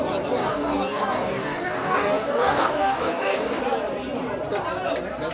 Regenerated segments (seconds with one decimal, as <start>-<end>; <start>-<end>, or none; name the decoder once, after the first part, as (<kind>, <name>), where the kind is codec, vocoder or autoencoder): 0.4-3.6 (codec, DAC)